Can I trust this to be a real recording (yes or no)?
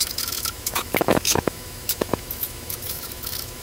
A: no